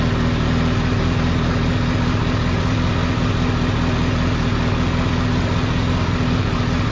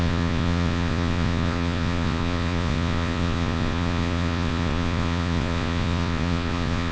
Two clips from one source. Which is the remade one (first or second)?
second